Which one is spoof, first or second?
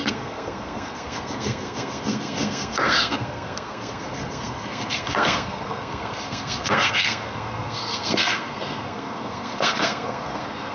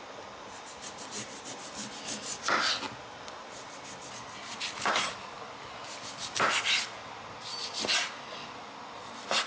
first